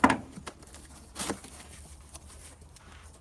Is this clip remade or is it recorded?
recorded